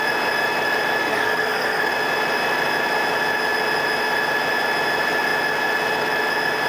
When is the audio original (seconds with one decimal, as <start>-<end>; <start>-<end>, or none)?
0.0-1.0; 1.9-6.7